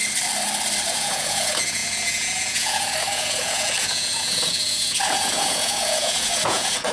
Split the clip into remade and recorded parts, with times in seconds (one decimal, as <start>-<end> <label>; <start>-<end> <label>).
0.0-0.9 recorded; 0.9-6.9 remade